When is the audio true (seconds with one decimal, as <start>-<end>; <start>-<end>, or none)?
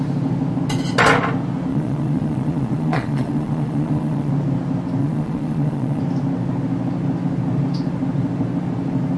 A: 0.0-1.7; 4.3-5.0; 6.0-9.2